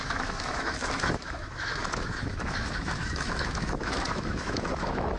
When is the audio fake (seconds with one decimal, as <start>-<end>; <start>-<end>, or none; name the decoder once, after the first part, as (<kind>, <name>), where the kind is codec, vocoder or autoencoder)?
0.0-5.2 (autoencoder, DAC-VAE)